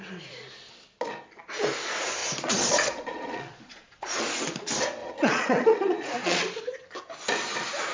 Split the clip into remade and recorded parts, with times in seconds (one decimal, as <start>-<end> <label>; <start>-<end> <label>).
0.0-2.2 recorded; 2.2-4.2 remade; 4.2-5.0 recorded; 5.0-6.6 remade; 6.6-7.9 recorded